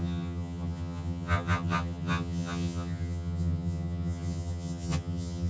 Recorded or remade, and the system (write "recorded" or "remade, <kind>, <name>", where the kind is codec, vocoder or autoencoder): remade, vocoder, HiFi-GAN